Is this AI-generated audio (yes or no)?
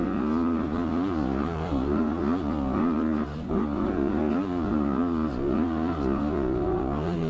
yes